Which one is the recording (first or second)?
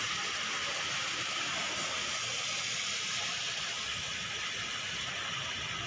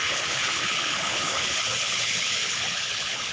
first